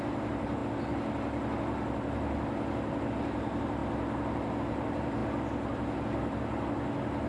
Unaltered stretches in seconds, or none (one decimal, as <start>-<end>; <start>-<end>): 0.6-3.1; 3.8-4.6; 5.2-7.3